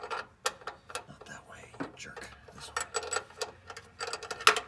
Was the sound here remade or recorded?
recorded